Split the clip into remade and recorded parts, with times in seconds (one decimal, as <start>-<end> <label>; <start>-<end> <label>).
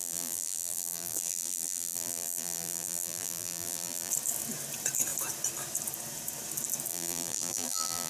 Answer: 0.0-4.1 remade; 4.1-6.9 recorded; 6.9-8.1 remade